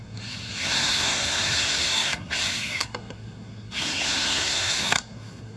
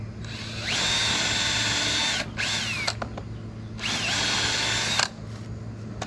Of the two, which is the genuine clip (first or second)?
second